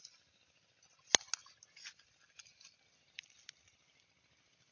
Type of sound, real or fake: real